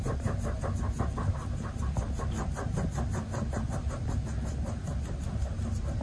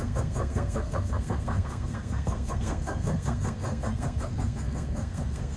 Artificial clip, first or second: second